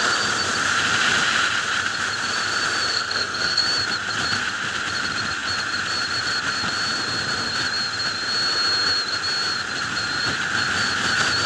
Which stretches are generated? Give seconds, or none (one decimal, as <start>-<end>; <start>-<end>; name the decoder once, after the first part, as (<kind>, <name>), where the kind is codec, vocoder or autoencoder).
2.9-3.6 (codec, SNAC)